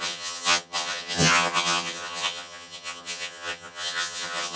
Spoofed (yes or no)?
yes